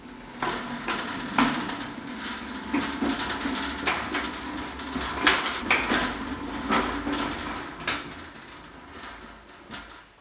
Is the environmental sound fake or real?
real